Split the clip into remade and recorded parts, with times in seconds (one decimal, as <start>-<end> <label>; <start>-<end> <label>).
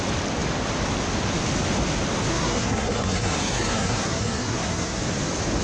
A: 0.0-2.3 recorded; 2.3-5.0 remade; 5.0-5.6 recorded